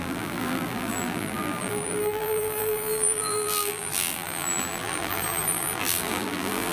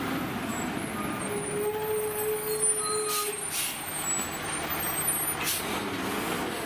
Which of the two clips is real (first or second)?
second